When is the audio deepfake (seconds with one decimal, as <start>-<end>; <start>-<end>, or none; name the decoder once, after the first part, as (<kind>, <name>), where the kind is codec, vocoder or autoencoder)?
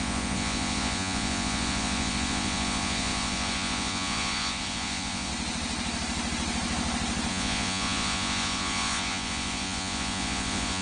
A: 0.0-5.3 (vocoder, Vocos); 7.3-10.8